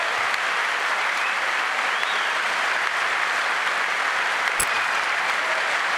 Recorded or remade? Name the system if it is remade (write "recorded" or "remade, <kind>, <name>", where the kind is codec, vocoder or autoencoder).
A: recorded